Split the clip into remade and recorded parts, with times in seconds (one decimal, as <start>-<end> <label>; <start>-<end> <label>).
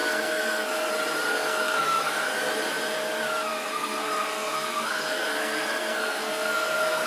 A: 0.0-0.9 remade; 0.9-1.3 recorded; 1.3-2.4 remade; 2.4-3.5 recorded; 3.5-7.1 remade